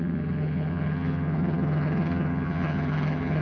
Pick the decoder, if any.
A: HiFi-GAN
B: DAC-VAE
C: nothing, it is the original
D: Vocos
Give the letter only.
A